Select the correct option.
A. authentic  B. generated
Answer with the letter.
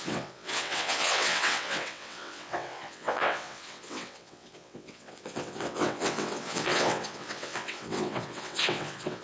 B